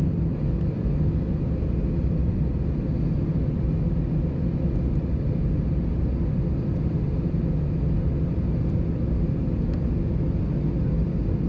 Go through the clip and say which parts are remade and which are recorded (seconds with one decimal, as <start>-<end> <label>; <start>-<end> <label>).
0.0-11.5 recorded